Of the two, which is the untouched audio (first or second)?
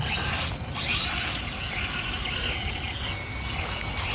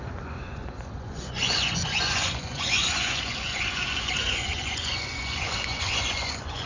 first